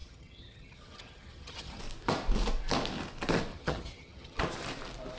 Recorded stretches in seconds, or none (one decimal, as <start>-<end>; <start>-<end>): 1.8-3.5; 4.4-5.2